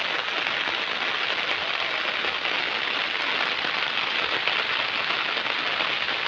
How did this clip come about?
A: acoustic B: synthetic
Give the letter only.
A